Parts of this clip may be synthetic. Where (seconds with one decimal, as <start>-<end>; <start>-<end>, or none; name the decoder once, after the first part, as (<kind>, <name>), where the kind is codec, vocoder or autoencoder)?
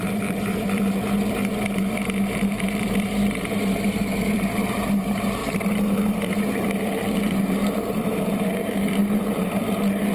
0.0-5.4 (vocoder, BigVGAN v2); 6.3-10.1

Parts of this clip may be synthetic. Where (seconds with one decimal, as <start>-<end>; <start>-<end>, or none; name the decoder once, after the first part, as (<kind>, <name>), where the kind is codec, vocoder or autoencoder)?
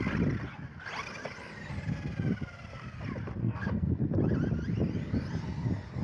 3.4-4.2 (codec, SNAC)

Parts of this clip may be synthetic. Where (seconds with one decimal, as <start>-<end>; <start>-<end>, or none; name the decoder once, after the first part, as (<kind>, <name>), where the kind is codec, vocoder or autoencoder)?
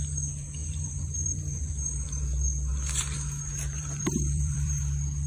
0.6-2.2 (vocoder, BigVGAN v2); 2.7-4.8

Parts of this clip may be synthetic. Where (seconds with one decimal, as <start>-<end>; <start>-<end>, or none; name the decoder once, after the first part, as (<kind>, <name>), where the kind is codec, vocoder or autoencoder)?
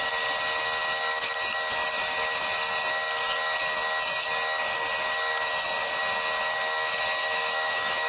7.2-8.1 (autoencoder, DAC-VAE)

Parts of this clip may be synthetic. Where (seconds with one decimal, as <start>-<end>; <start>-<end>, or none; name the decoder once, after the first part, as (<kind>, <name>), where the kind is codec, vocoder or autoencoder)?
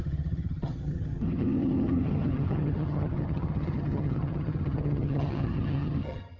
0.0-6.4 (vocoder, HiFi-GAN)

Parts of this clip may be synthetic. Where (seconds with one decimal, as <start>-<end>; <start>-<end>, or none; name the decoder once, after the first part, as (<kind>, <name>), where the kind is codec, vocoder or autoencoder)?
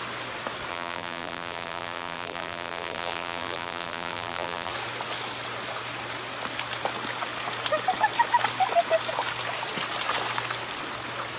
0.7-4.7 (vocoder, BigVGAN v2)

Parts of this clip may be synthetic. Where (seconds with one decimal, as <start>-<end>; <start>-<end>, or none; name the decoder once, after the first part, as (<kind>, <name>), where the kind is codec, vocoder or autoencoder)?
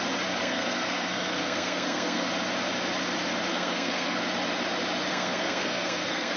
0.4-2.3 (codec, SNAC); 3.5-4.2; 5.1-6.4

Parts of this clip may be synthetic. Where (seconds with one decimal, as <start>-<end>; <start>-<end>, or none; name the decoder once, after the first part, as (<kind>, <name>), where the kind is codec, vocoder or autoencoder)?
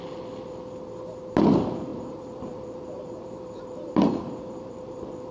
1.9-5.3 (vocoder, BigVGAN v2)